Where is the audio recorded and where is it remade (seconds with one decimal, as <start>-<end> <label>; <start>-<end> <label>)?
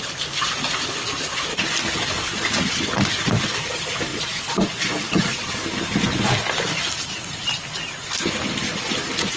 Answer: 0.0-4.1 recorded; 4.1-5.5 remade; 5.5-9.4 recorded